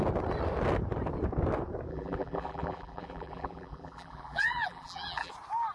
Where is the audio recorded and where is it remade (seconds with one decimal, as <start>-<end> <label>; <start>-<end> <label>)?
0.0-1.9 recorded; 1.9-5.3 remade; 5.3-5.7 recorded